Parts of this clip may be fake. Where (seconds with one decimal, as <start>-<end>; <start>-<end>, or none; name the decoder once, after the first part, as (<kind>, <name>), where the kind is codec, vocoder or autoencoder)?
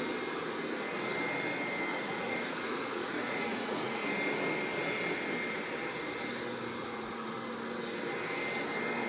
1.9-4.0 (vocoder, Vocos); 6.8-7.3